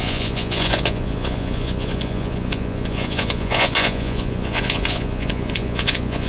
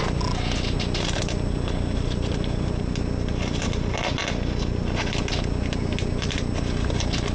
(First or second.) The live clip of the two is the second